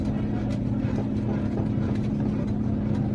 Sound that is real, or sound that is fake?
real